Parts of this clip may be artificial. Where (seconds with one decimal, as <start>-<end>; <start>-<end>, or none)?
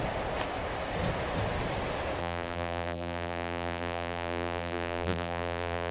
2.2-5.9